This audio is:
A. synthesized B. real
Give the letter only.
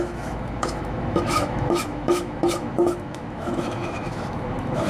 A